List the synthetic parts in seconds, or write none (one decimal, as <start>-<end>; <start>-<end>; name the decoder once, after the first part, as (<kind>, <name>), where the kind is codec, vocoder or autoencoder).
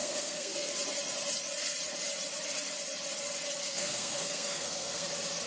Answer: 0.0-0.7 (codec, SNAC); 3.6-5.1